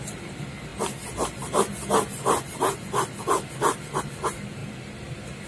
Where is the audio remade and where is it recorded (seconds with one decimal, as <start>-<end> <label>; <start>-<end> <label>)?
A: 0.0-5.5 recorded